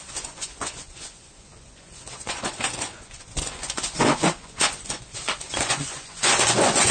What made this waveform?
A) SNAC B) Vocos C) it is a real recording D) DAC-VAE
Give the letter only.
B